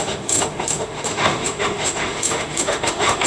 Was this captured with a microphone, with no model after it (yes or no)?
no